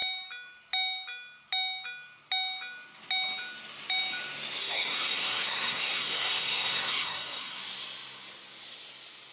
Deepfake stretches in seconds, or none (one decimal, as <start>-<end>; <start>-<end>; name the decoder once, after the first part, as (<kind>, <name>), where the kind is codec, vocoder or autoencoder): 4.6-7.6 (codec, SNAC)